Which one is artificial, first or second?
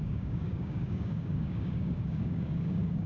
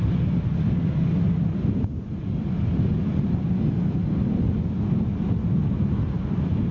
first